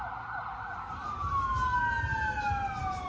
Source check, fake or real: real